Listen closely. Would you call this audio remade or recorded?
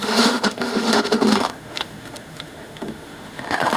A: remade